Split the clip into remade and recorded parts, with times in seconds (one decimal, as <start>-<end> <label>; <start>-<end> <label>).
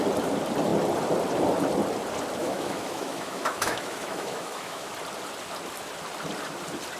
0.0-2.4 recorded; 2.4-4.9 remade; 4.9-7.0 recorded